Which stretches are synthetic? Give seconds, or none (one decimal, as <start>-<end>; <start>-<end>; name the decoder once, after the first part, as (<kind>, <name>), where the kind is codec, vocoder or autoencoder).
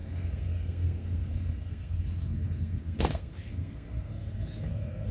0.0-5.1 (codec, SNAC)